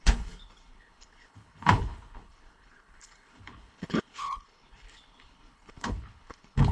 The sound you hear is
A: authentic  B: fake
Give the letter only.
B